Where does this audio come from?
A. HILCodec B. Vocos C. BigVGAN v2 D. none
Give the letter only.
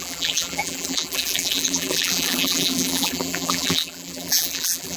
C